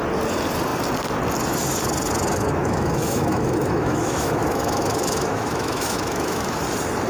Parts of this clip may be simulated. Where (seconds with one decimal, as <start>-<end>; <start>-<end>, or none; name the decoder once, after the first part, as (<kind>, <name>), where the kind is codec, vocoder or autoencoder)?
2.3-6.6 (autoencoder, DAC-VAE)